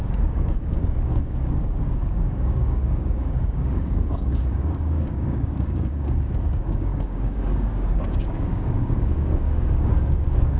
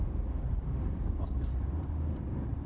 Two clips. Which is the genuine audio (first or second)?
second